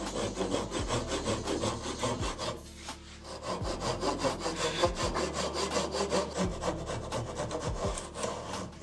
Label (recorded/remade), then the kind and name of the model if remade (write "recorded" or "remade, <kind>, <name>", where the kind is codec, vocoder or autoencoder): recorded